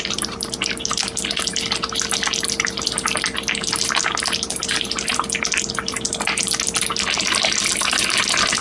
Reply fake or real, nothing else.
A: real